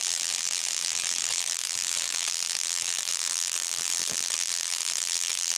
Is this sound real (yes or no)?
no